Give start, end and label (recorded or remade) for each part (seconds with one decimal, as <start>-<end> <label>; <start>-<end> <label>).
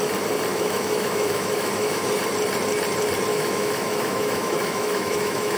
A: 0.0-0.5 recorded; 0.5-2.1 remade; 2.1-3.3 recorded; 3.3-5.6 remade